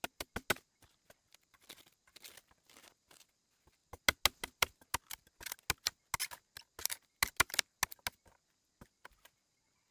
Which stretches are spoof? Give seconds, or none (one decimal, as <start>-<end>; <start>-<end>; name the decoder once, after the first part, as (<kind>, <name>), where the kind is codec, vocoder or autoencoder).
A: none